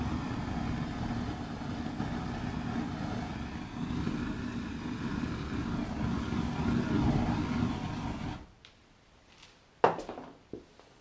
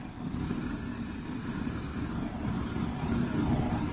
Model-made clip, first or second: second